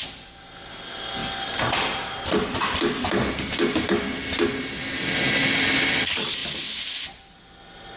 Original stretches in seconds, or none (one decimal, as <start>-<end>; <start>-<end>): 0.0-8.0